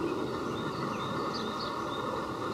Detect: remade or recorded recorded